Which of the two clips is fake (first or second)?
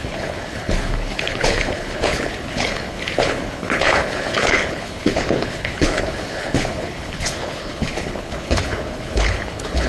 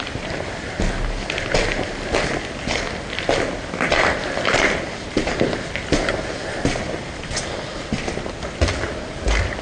first